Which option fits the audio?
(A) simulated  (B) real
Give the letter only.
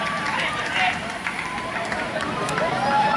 A